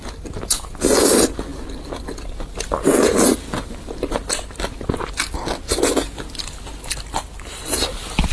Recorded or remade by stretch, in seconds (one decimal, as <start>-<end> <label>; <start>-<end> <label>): 0.0-8.3 recorded